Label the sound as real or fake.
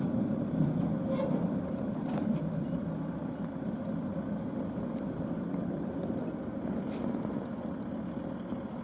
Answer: real